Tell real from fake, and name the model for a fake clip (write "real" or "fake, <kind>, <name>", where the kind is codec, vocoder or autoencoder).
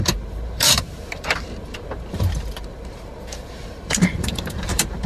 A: fake, vocoder, BigVGAN v2